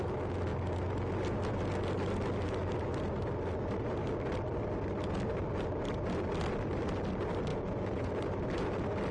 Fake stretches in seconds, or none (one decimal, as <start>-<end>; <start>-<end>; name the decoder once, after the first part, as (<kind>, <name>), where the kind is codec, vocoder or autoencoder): 7.5-8.1 (vocoder, Vocos)